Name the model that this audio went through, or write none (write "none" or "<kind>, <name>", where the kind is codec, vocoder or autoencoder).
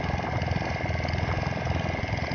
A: none